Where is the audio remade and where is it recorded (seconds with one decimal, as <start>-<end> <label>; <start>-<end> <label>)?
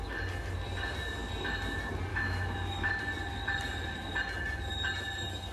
0.0-2.1 recorded; 2.1-3.0 remade; 3.0-5.5 recorded